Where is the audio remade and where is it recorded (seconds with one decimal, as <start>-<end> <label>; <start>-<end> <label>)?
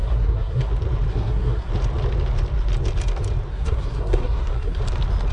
0.0-0.7 remade; 0.7-1.1 recorded; 1.1-1.7 remade; 1.7-3.5 recorded; 3.5-4.8 remade; 4.8-5.3 recorded